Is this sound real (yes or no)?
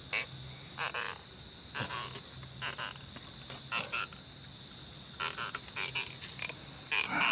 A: yes